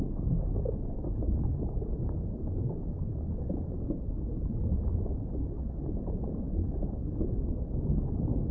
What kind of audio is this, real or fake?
fake